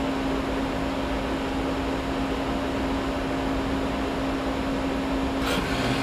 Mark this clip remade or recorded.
recorded